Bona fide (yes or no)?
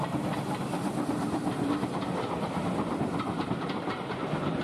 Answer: yes